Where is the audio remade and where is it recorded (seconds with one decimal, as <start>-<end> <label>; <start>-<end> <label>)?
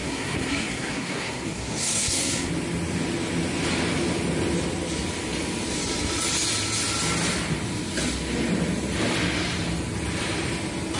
0.0-2.5 remade; 2.5-11.0 recorded